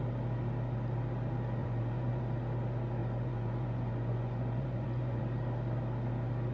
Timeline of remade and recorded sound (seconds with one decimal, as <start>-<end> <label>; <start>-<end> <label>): 0.0-1.6 recorded; 1.6-2.2 remade; 2.2-3.0 recorded; 3.0-5.2 remade; 5.2-6.5 recorded